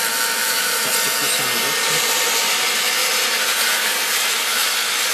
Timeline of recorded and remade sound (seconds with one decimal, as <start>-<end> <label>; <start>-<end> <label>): 0.0-0.4 recorded; 0.4-0.9 remade; 0.9-3.0 recorded; 3.0-4.6 remade; 4.6-5.1 recorded